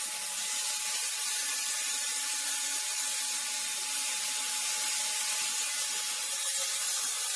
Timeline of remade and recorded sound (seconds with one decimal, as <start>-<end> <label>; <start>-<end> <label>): 0.0-7.4 recorded

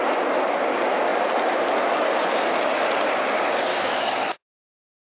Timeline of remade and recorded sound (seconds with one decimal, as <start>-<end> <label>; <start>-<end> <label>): 0.0-3.7 recorded; 3.7-5.1 remade

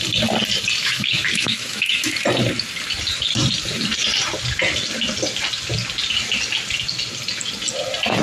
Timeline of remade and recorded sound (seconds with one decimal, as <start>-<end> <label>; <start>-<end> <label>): 0.0-0.8 recorded; 0.8-2.0 remade; 2.0-8.2 recorded